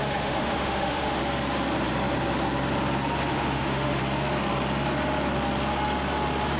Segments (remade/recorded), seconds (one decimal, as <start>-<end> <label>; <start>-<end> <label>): 0.0-1.2 remade; 1.2-3.3 recorded; 3.3-4.0 remade; 4.0-6.6 recorded